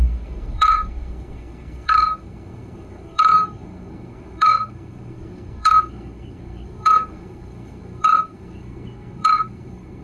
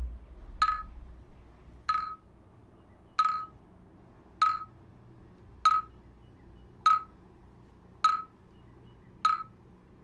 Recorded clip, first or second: second